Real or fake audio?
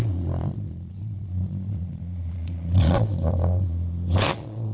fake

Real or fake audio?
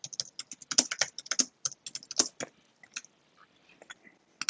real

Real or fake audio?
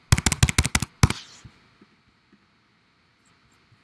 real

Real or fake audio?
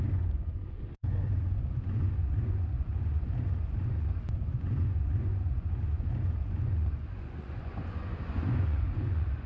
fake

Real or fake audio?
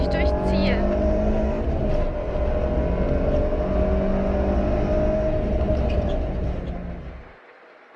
real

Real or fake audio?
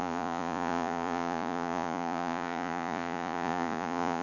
fake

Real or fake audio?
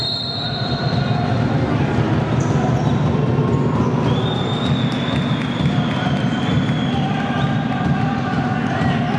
real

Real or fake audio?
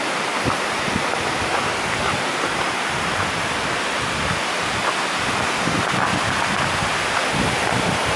real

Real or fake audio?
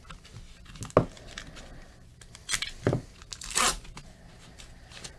real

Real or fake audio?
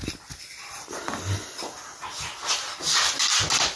real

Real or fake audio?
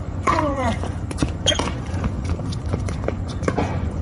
fake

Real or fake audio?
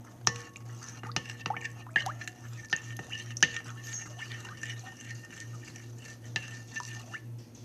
real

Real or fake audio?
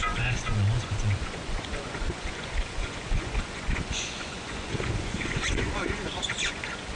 fake